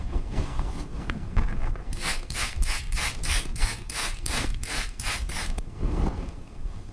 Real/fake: fake